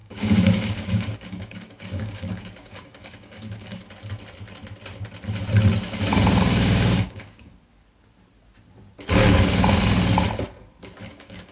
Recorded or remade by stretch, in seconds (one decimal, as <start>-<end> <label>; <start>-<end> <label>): 0.0-3.8 remade; 3.8-6.4 recorded; 6.4-7.5 remade; 7.5-11.1 recorded; 11.1-11.5 remade